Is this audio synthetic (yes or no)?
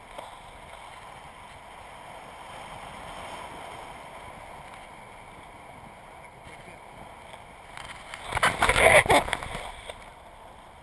no